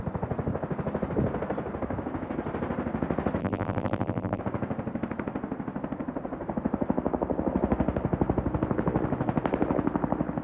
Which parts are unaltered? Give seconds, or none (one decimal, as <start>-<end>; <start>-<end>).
0.0-3.4; 4.4-10.4